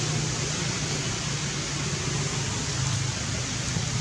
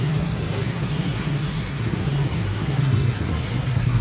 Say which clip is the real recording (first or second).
first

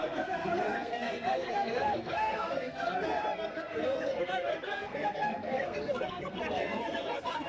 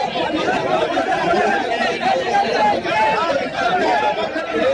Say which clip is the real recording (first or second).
second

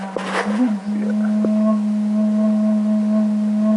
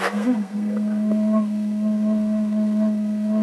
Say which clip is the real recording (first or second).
first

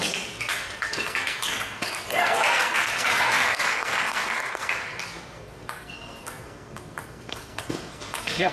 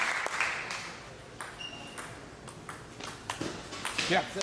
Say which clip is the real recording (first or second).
second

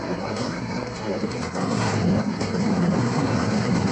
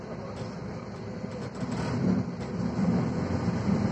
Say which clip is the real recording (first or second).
second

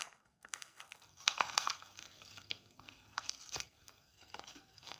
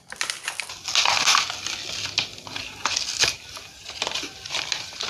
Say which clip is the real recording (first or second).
second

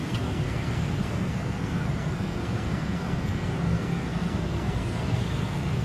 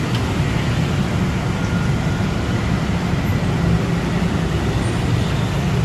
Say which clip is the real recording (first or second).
second